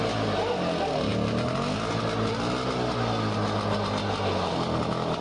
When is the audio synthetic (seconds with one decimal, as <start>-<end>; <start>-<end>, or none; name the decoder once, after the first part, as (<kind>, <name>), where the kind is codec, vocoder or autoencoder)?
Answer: none